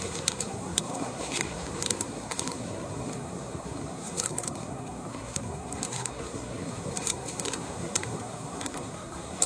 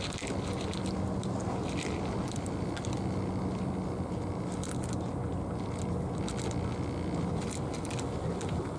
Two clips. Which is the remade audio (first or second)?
first